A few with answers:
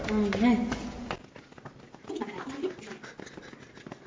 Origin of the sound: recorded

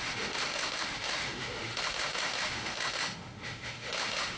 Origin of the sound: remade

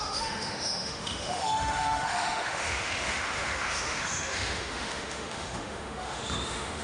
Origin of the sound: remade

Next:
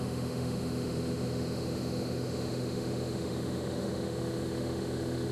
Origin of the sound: remade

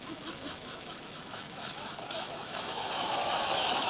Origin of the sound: remade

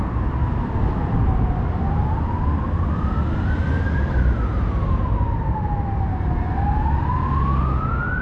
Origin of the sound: recorded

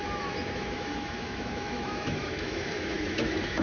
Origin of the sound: remade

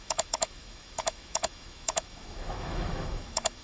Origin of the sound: remade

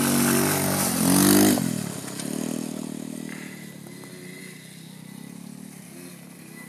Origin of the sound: recorded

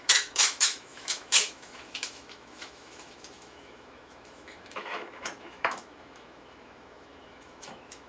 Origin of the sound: remade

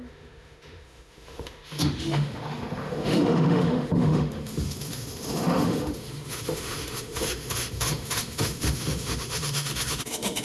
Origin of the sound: remade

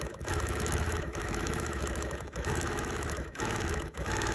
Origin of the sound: remade